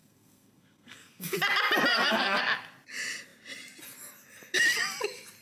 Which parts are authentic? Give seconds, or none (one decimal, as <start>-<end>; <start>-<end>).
1.4-1.9; 2.4-5.4